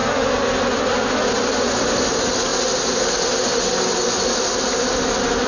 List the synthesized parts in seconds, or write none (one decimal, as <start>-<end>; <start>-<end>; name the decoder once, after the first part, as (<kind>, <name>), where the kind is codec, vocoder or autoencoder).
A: none